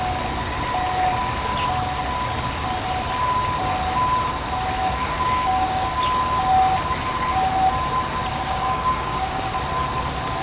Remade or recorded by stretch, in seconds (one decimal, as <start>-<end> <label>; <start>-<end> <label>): 0.0-4.8 recorded; 4.8-6.0 remade; 6.0-8.2 recorded; 8.2-9.5 remade; 9.5-10.4 recorded